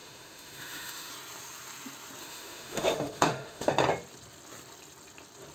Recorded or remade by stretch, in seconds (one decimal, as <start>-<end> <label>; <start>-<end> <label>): 0.0-1.1 remade; 1.1-2.2 recorded; 2.2-3.7 remade; 3.7-5.5 recorded